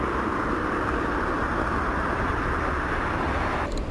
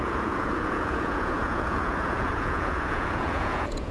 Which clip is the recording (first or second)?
first